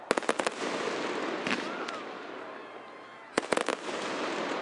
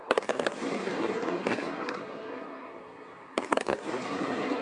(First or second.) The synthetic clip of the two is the second